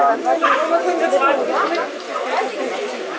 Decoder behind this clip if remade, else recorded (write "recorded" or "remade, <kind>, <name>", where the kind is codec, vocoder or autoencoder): recorded